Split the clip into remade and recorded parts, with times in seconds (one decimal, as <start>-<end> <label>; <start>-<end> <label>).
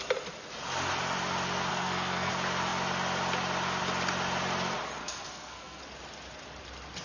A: 0.0-1.7 recorded; 1.7-2.3 remade; 2.3-5.0 recorded; 5.0-5.8 remade; 5.8-7.0 recorded